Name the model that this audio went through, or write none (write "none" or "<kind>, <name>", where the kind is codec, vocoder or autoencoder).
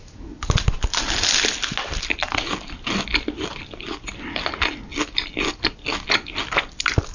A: none